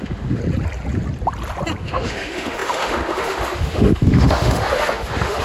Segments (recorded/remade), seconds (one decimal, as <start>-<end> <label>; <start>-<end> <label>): 0.0-0.4 remade; 0.4-1.8 recorded; 1.8-5.4 remade